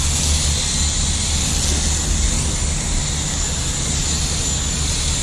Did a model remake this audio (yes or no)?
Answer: no